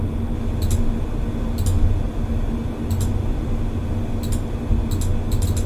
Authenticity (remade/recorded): recorded